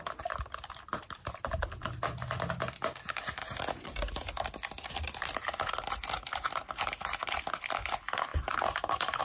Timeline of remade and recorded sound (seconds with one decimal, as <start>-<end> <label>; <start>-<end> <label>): 0.0-9.2 recorded

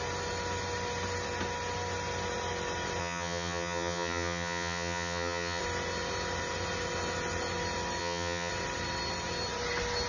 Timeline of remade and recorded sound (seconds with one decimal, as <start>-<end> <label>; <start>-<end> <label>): 0.0-3.0 recorded; 3.0-5.6 remade; 5.6-8.0 recorded; 8.0-8.5 remade; 8.5-10.1 recorded

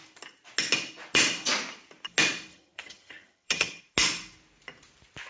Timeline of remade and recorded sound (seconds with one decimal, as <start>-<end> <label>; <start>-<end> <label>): 0.0-2.5 recorded; 2.5-3.8 remade; 3.8-5.3 recorded

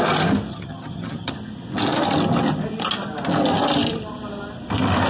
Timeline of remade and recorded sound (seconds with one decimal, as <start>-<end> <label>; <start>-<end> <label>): 0.0-0.5 recorded; 0.5-1.3 remade; 1.3-5.1 recorded